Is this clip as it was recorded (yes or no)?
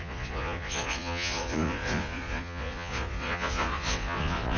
no